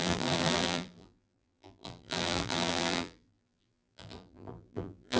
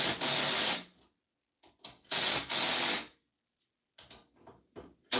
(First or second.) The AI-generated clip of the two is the first